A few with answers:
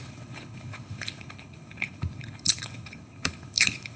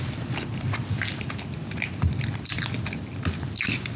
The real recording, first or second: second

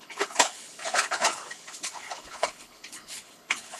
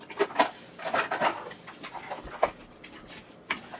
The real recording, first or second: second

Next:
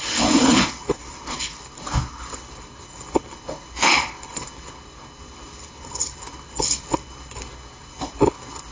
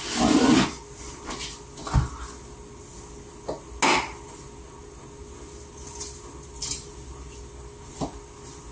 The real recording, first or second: second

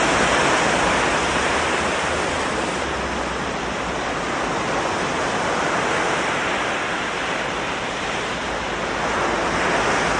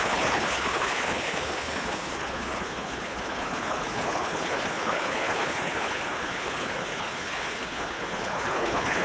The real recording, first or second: first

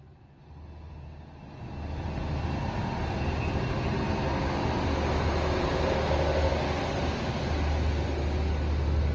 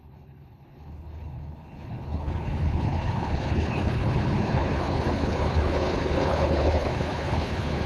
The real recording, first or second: first